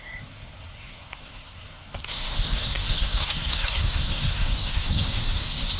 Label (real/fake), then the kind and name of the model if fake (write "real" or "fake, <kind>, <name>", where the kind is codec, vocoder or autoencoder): fake, codec, SNAC